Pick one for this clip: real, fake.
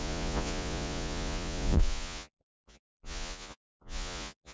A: fake